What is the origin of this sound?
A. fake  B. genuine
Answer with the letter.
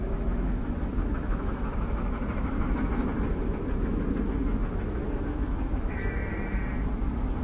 A